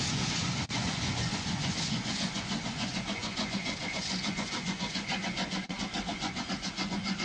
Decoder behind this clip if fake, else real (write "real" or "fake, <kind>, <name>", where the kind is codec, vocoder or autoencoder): fake, vocoder, Vocos